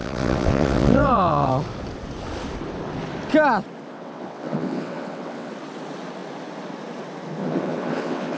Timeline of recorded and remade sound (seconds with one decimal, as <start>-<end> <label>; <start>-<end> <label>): 0.0-1.5 remade; 1.5-3.9 recorded; 3.9-5.5 remade; 5.5-7.4 recorded; 7.4-8.4 remade